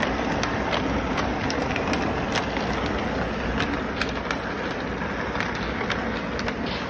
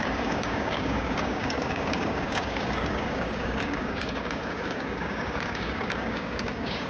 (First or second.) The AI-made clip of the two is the second